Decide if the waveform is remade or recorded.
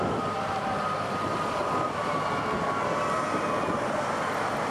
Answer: recorded